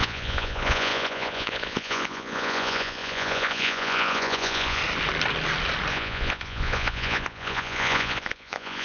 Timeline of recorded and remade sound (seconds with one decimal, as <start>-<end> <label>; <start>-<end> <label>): 0.0-4.8 remade; 4.8-5.9 recorded; 5.9-8.8 remade